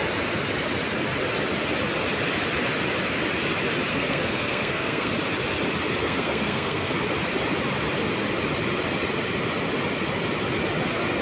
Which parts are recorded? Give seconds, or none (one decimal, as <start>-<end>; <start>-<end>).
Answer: 0.0-3.9; 5.1-6.0; 6.9-11.2